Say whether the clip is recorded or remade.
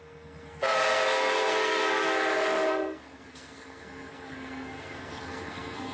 remade